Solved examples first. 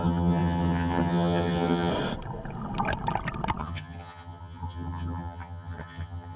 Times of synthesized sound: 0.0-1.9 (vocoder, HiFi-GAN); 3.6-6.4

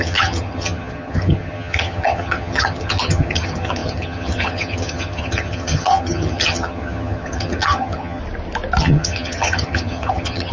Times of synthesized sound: 0.0-8.2 (vocoder, HiFi-GAN); 8.8-10.5

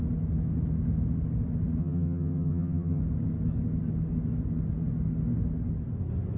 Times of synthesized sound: 1.8-3.0 (vocoder, HiFi-GAN)

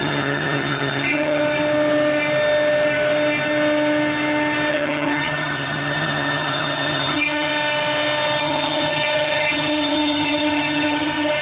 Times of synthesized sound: 0.0-1.4 (vocoder, HiFi-GAN); 4.7-7.5; 8.4-11.4

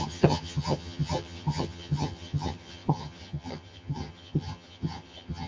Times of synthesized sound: 0.0-5.5 (vocoder, HiFi-GAN)